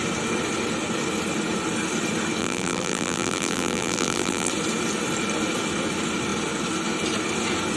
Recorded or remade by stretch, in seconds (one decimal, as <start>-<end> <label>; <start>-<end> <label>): 0.0-2.4 recorded; 2.4-4.5 remade; 4.5-7.8 recorded